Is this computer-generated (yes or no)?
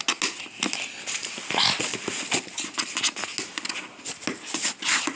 no